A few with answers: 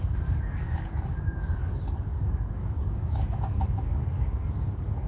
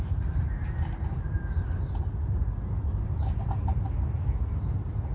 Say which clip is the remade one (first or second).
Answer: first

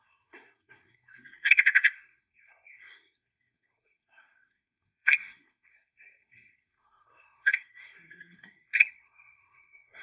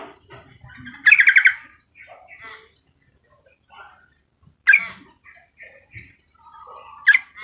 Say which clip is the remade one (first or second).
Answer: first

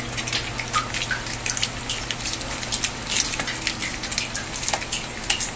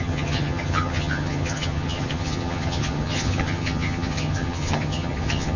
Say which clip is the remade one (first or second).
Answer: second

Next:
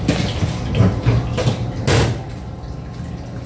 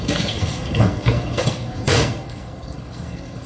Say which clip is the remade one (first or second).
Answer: second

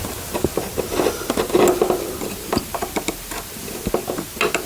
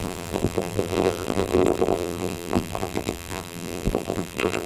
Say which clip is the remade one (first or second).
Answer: second